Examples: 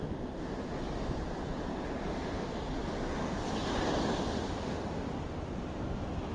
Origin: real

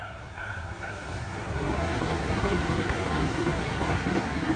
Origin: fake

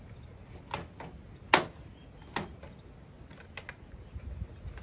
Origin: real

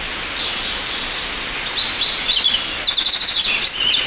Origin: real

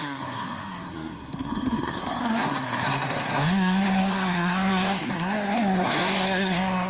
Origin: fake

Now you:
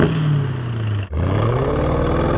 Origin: real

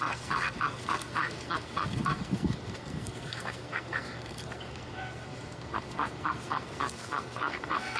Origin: fake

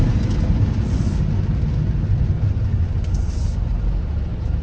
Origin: real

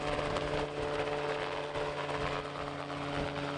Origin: real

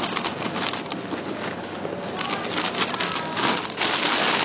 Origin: real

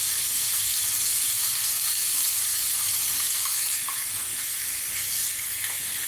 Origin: fake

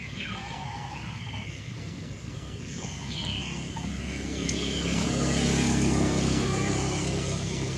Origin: fake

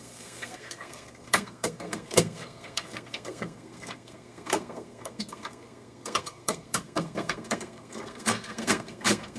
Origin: fake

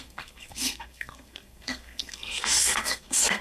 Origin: fake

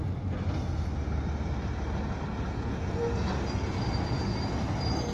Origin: real